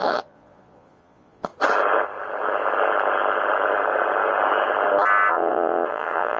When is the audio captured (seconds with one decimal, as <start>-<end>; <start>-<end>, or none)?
1.5-5.3